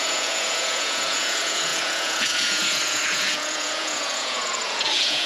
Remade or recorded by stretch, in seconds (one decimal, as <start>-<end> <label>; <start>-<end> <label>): 0.0-5.3 remade